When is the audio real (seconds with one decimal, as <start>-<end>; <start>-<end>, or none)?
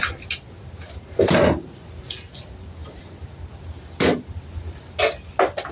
0.0-5.7